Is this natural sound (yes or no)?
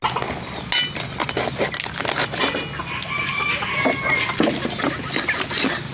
yes